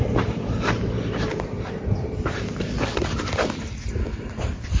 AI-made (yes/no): no